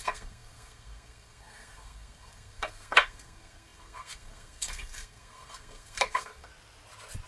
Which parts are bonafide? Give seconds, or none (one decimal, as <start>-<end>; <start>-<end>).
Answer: 6.5-7.3